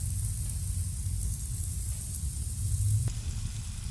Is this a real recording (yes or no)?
yes